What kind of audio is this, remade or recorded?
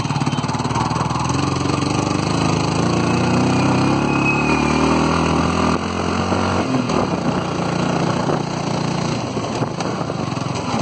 recorded